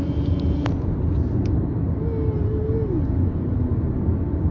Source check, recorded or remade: recorded